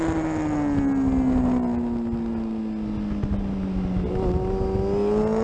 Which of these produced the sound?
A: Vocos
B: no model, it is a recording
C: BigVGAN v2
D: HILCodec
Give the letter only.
B